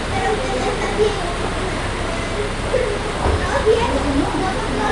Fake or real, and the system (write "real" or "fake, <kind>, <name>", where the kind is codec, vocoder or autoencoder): real